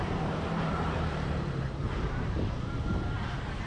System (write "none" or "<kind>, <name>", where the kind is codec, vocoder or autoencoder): vocoder, BigVGAN v2